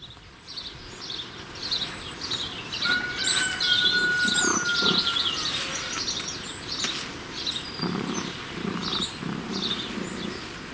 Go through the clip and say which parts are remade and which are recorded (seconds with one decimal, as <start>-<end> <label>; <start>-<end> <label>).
0.0-10.7 recorded